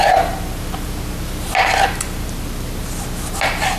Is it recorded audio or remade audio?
recorded